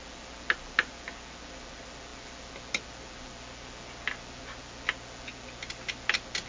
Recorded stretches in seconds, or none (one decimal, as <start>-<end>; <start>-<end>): 0.0-6.5

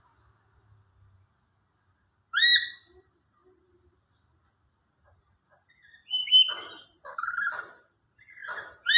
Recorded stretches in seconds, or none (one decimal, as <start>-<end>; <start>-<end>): 0.0-9.0

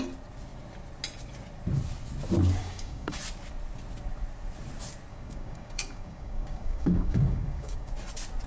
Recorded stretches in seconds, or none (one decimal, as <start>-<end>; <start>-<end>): 0.0-2.6; 3.2-5.1; 7.9-8.5

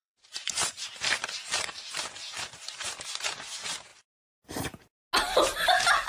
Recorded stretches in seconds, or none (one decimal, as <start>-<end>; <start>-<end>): 3.9-6.1